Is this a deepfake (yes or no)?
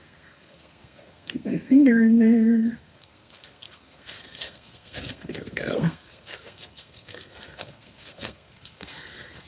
yes